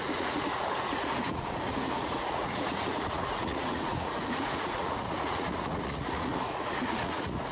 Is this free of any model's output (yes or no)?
no